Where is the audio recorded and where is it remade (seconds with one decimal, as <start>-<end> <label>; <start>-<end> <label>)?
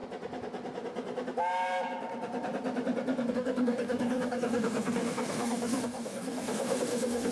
0.0-3.3 recorded; 3.3-7.3 remade